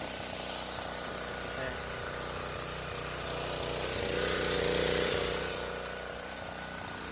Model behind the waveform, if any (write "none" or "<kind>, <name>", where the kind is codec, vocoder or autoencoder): vocoder, BigVGAN v2